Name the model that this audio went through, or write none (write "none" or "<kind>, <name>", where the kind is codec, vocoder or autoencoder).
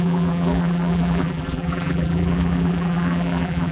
vocoder, BigVGAN v2